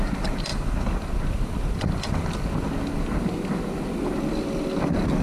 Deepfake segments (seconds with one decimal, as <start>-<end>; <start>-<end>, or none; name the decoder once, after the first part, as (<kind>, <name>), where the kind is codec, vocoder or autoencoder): none